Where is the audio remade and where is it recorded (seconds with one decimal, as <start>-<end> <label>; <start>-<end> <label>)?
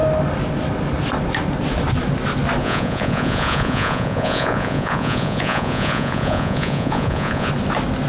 0.0-2.6 recorded; 2.6-7.5 remade; 7.5-8.1 recorded